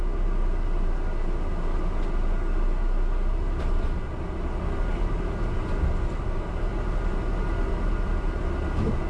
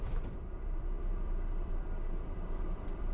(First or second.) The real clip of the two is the first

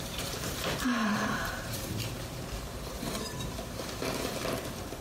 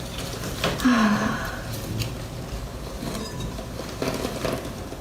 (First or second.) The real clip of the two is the second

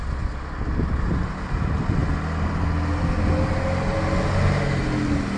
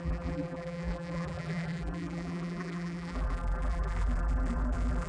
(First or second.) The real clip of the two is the first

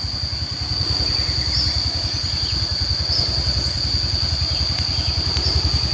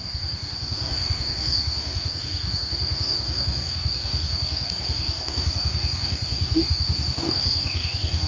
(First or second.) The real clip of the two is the first